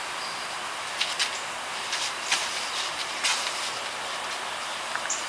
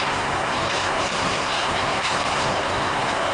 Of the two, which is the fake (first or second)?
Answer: second